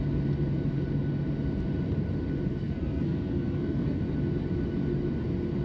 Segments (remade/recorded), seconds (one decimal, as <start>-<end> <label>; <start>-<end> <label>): 0.0-2.5 recorded; 2.5-4.0 remade; 4.0-5.6 recorded

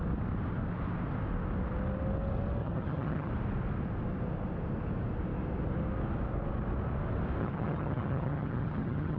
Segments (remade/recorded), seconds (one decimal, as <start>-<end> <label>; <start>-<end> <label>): 0.0-2.6 recorded; 2.6-3.3 remade; 3.3-7.4 recorded; 7.4-9.2 remade